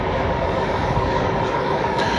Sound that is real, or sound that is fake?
fake